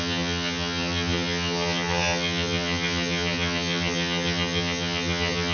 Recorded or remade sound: remade